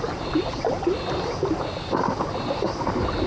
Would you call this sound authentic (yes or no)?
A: yes